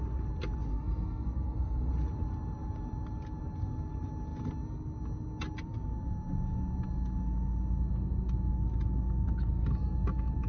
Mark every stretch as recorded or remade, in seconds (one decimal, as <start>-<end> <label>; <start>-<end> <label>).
0.0-0.7 recorded; 0.7-1.9 remade; 1.9-10.5 recorded